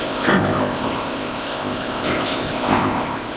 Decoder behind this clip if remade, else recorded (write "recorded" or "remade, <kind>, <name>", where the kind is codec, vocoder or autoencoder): remade, codec, ZipCodec